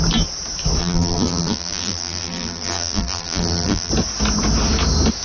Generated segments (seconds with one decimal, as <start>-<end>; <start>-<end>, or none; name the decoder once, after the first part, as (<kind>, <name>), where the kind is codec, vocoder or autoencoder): 0.8-3.9 (vocoder, BigVGAN v2)